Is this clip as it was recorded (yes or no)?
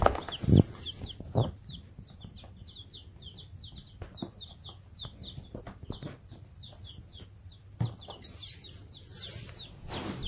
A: yes